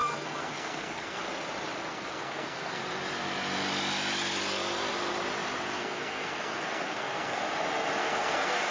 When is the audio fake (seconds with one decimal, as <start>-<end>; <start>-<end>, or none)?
0.0-1.2; 1.9-2.8; 5.8-7.4; 8.0-8.7

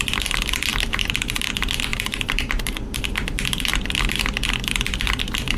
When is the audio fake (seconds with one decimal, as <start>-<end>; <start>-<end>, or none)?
0.7-1.5; 1.9-3.0